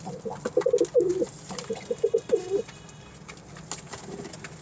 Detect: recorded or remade recorded